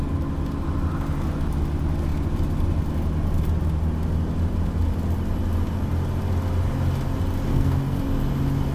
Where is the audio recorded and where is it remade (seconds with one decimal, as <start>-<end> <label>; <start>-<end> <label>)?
0.0-7.5 recorded; 7.5-8.0 remade; 8.0-8.7 recorded